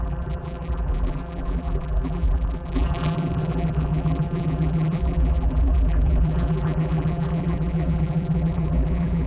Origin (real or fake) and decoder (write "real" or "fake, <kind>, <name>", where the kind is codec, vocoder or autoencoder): fake, vocoder, BigVGAN v2